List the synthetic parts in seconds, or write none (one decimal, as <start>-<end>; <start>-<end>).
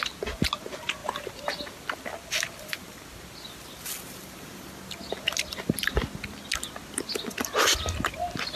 none